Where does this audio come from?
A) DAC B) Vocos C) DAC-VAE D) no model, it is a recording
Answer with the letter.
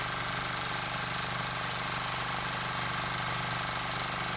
D